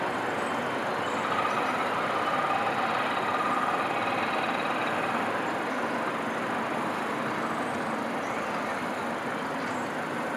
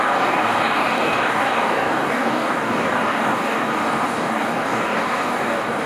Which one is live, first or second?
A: first